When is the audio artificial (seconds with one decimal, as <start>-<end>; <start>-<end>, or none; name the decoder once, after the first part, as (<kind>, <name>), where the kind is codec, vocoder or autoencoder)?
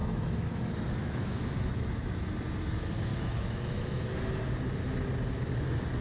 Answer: 0.0-0.5 (autoencoder, DAC-VAE); 1.0-2.3; 3.1-4.1